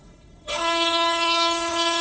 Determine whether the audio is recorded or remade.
remade